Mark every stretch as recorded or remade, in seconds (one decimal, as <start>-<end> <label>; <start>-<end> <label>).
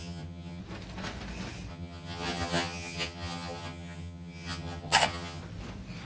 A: 0.0-0.6 remade; 0.6-1.7 recorded; 1.7-5.4 remade; 5.4-6.1 recorded